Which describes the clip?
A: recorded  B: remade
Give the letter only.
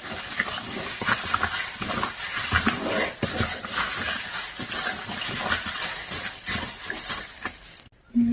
A